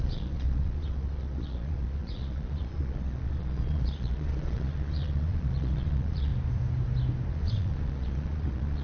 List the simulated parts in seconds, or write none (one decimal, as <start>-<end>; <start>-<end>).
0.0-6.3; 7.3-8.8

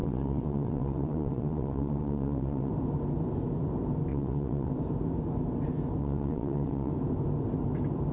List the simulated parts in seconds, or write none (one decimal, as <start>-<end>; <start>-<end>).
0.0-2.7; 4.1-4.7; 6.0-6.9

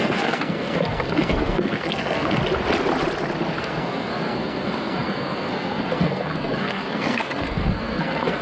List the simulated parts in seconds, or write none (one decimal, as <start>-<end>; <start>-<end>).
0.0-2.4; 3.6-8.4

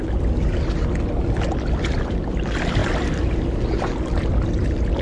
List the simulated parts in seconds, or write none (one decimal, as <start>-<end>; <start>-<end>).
none

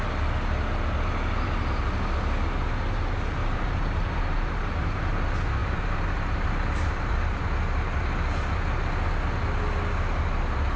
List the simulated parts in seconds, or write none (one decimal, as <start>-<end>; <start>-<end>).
3.4-4.6; 5.6-7.4

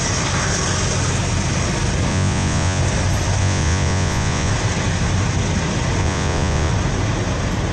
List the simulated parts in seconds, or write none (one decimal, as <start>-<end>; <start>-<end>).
2.1-2.8; 3.4-4.5; 6.0-6.7

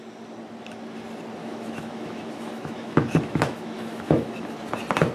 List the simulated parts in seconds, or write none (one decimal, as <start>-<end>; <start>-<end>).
1.4-4.5

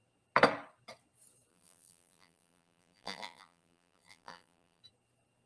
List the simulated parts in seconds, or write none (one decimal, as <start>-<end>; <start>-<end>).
1.5-4.8